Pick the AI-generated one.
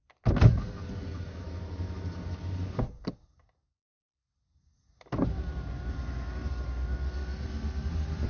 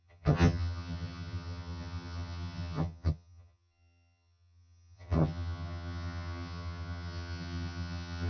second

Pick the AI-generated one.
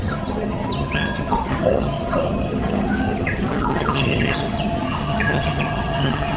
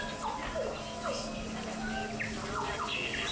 first